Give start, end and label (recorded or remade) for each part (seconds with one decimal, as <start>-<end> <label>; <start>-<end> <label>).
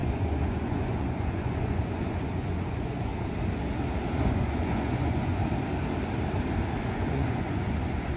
0.0-3.1 remade; 3.1-4.1 recorded; 4.1-5.4 remade; 5.4-6.8 recorded; 6.8-8.2 remade